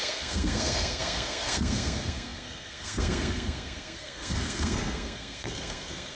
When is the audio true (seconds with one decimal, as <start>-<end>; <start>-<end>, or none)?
none